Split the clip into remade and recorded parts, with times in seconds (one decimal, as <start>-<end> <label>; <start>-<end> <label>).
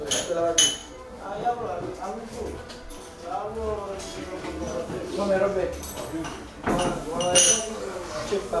0.0-8.6 recorded